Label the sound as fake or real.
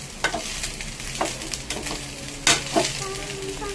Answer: real